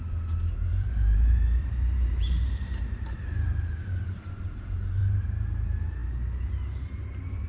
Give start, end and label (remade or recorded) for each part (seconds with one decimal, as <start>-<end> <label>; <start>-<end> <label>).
0.0-0.7 recorded; 0.7-5.0 remade; 5.0-7.5 recorded